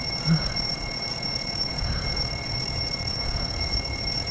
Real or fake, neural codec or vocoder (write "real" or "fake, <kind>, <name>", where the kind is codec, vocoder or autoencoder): fake, vocoder, Vocos